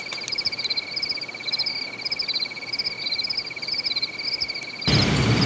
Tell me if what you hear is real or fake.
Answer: real